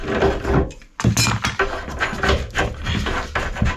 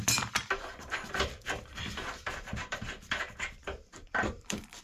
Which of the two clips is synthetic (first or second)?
second